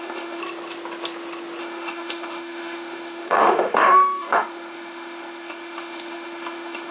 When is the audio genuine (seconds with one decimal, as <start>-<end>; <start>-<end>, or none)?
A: 0.4-1.6